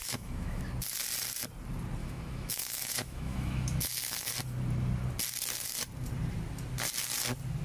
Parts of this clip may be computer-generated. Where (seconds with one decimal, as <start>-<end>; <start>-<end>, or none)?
0.0-0.6; 2.0-4.3